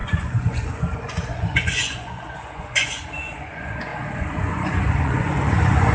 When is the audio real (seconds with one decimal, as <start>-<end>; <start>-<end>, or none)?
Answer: none